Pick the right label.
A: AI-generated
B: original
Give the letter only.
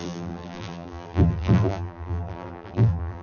A